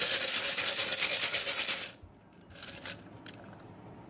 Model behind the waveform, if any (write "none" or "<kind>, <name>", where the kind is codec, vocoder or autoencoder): none